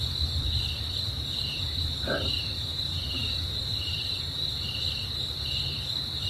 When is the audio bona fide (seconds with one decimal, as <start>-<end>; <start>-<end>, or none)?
none